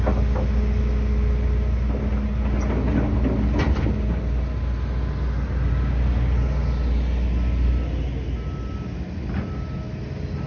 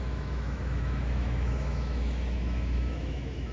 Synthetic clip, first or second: second